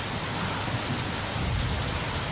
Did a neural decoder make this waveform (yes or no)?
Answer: no